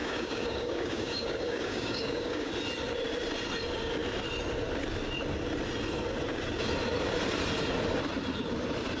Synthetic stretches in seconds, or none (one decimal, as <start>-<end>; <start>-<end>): 0.0-2.5